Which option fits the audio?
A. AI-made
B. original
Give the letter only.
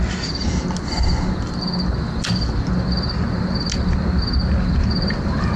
B